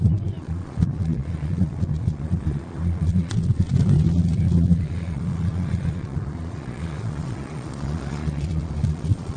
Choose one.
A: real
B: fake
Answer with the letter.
B